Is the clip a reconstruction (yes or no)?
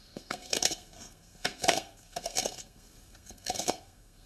yes